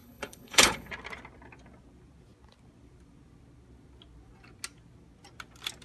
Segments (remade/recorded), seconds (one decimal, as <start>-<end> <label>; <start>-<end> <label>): 0.0-0.9 remade; 0.9-5.8 recorded